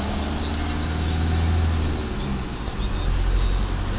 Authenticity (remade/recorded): recorded